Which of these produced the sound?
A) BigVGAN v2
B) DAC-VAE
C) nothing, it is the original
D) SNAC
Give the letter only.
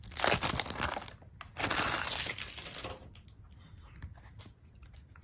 C